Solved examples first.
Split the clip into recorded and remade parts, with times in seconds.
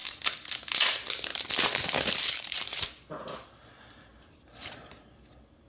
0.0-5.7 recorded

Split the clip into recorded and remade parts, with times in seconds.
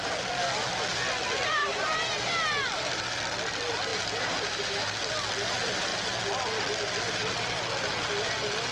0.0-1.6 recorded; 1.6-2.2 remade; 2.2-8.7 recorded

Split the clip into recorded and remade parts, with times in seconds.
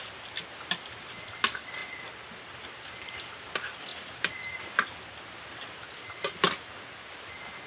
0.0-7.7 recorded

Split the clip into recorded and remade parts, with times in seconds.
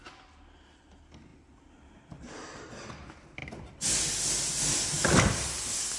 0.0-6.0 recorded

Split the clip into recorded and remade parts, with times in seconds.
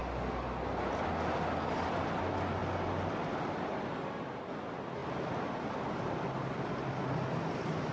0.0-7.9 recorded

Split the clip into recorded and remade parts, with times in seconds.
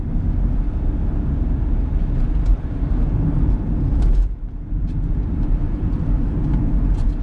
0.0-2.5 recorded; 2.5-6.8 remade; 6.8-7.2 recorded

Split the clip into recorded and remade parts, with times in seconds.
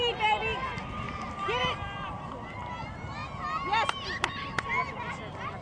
0.0-5.6 recorded